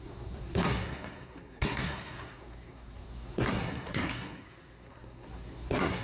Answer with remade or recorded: remade